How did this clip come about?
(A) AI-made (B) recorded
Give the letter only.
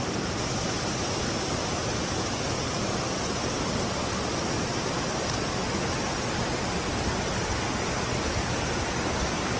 B